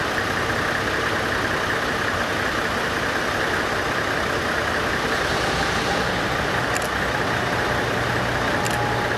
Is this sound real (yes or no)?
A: yes